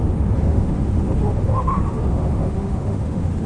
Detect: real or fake fake